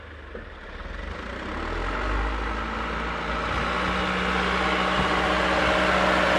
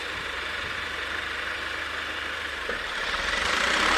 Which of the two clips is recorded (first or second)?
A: first